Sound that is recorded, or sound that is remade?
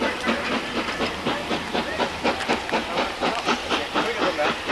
recorded